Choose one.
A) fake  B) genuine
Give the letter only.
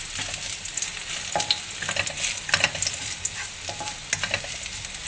B